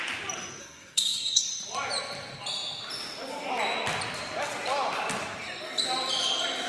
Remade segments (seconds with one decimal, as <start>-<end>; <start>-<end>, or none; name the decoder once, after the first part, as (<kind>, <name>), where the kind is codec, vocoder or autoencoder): 0.6-1.5 (codec, SNAC)